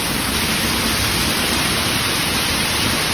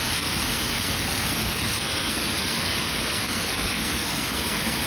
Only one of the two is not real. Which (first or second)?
second